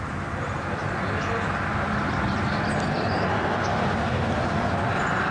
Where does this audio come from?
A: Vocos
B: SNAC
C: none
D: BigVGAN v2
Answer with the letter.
C